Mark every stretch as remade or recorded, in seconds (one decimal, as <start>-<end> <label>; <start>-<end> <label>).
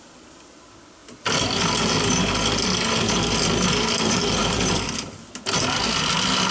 0.0-4.4 recorded; 4.4-4.9 remade; 4.9-6.5 recorded